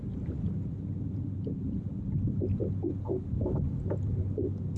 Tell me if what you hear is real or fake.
real